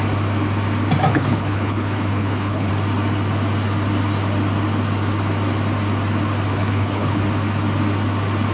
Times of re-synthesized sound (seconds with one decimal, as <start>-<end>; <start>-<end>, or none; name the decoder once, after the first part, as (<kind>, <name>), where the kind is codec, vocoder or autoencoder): 1.1-2.7 (codec, HILCodec); 6.5-7.2